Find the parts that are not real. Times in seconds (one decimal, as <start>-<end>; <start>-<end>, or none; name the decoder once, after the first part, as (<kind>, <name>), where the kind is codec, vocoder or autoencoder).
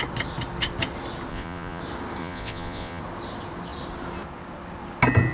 1.3-1.8 (vocoder, Vocos); 2.2-3.0